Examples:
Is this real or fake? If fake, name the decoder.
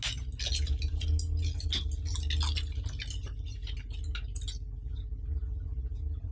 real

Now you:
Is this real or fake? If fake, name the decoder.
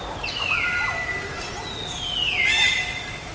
real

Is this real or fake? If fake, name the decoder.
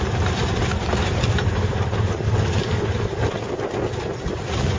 real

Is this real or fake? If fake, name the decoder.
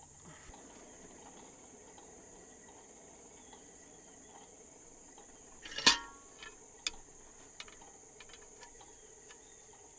real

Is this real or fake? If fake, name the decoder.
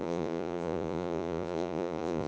fake, vocoder, Vocos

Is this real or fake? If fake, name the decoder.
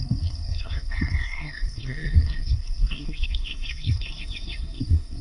fake, codec, SNAC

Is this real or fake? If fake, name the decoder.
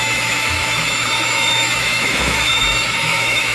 fake, autoencoder, DAC-VAE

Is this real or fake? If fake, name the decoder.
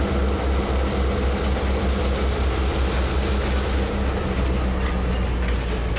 real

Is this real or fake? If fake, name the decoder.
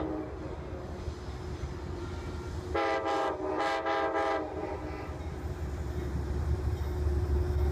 real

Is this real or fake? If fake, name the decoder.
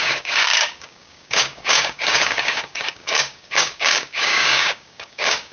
fake, codec, DAC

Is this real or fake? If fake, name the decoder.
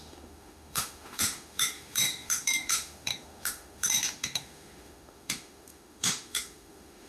fake, autoencoder, DAC-VAE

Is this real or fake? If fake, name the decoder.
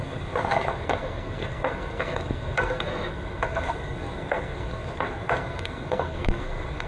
fake, codec, SNAC